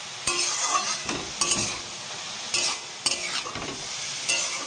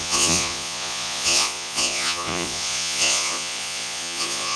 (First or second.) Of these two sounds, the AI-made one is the second